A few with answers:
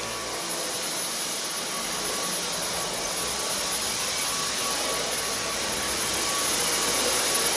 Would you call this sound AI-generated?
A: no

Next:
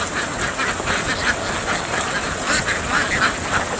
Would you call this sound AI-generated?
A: no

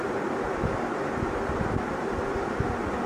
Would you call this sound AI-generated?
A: no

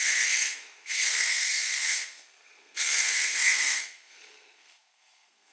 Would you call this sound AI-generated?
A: yes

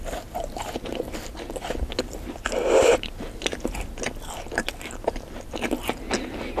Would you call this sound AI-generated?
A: no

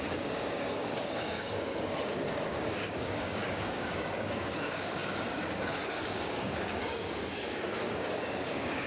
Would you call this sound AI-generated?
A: yes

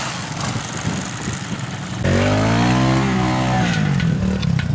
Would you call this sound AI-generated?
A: no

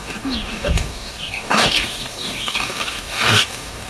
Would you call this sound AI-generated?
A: yes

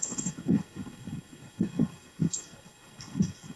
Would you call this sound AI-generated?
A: yes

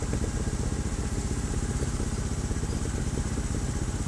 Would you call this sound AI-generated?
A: no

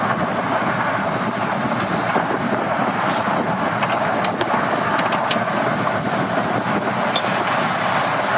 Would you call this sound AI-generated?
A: no